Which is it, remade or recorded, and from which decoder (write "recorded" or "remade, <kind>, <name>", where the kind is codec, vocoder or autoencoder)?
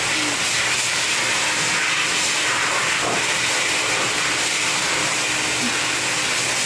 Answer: recorded